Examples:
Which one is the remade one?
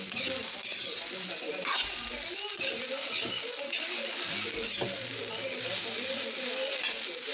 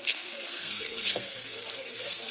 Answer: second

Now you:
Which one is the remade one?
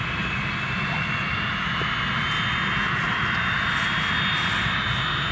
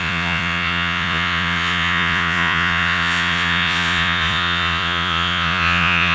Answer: second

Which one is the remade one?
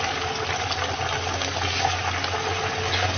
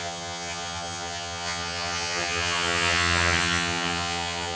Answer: second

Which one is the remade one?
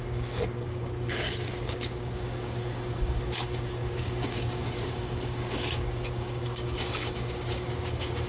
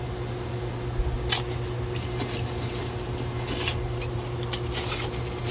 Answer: first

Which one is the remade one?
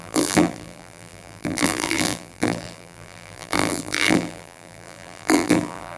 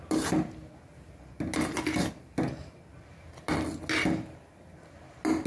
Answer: first